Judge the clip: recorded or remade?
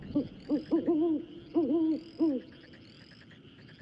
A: recorded